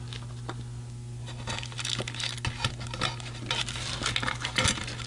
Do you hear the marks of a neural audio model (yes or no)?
no